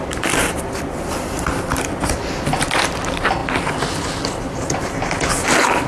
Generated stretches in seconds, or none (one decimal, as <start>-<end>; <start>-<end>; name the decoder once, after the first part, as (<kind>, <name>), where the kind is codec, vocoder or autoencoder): 0.0-3.4 (vocoder, BigVGAN v2); 3.9-5.9